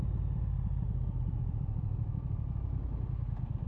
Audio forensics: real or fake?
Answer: real